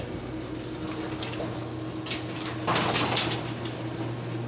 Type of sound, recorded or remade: recorded